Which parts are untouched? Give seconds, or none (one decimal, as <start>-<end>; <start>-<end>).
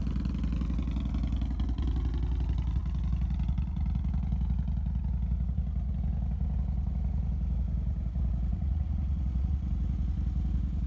0.0-8.5; 9.7-10.9